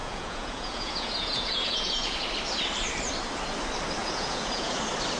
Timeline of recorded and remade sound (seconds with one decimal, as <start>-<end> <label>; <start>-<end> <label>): 0.0-2.3 remade; 2.3-4.0 recorded; 4.0-4.8 remade; 4.8-5.2 recorded